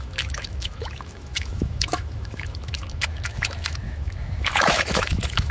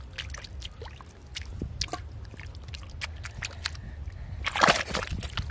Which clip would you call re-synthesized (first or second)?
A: first